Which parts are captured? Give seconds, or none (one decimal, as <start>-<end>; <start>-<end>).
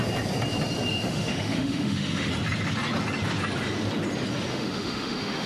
0.0-0.9; 2.3-4.5